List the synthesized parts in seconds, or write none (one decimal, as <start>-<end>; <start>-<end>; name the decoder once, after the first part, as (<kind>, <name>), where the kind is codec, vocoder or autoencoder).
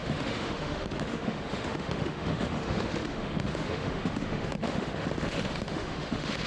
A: 0.0-6.5 (autoencoder, DAC-VAE)